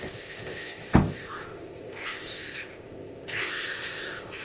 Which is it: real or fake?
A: fake